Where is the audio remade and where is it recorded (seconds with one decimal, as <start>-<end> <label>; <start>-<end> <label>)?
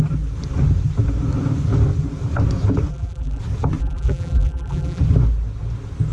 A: 0.0-2.9 recorded; 2.9-3.4 remade; 3.4-3.8 recorded; 3.8-5.0 remade; 5.0-6.1 recorded